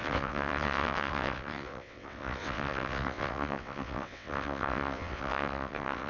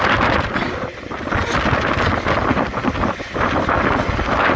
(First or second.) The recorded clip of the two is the second